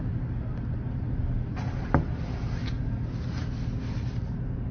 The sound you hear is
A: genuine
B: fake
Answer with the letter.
A